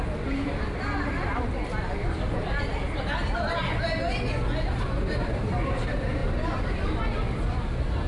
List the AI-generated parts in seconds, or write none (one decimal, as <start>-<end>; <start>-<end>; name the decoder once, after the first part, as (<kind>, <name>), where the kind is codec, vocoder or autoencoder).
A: none